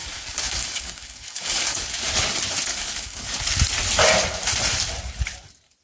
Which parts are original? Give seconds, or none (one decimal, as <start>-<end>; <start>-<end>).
1.9-2.7; 3.4-5.8